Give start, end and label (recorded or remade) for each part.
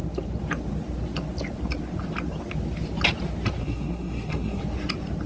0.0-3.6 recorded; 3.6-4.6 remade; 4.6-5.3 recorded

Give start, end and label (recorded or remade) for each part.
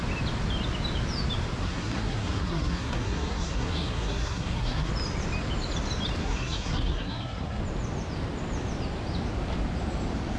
0.0-1.6 recorded; 1.6-4.9 remade; 4.9-6.2 recorded; 6.2-7.6 remade; 7.6-10.4 recorded